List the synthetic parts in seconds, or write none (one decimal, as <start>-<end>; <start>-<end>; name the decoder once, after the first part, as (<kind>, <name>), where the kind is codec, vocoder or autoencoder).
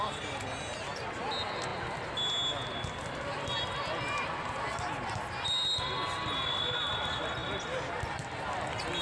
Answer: none